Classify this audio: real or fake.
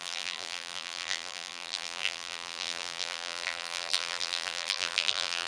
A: fake